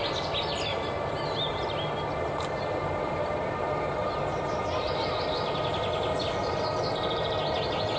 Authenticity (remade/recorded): recorded